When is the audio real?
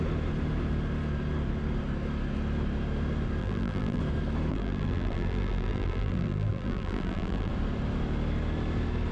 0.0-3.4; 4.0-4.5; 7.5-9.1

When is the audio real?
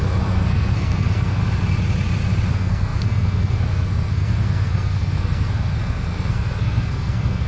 1.4-2.5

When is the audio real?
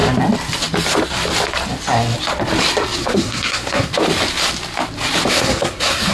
0.0-3.0; 3.9-5.3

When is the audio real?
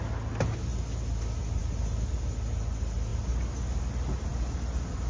0.0-5.1